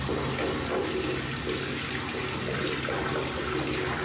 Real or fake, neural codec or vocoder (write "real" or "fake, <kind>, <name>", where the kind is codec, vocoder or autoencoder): real